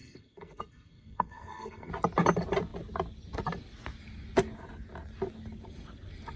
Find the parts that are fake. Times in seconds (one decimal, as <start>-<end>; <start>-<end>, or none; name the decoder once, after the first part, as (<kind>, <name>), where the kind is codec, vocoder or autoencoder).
0.0-1.9 (codec, SNAC)